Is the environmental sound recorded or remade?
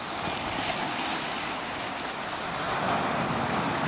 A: recorded